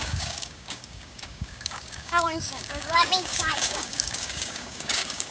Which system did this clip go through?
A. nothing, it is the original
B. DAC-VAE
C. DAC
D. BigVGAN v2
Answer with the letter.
C